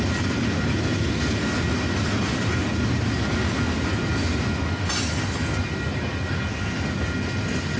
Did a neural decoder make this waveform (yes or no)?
no